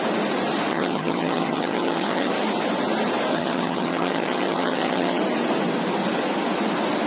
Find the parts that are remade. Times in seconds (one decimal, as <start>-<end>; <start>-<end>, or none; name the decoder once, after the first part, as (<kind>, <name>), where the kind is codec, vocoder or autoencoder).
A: 0.7-2.3 (vocoder, HiFi-GAN); 3.3-5.2